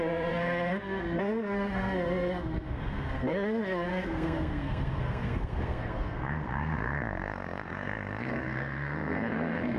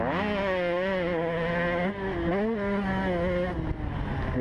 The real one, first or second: second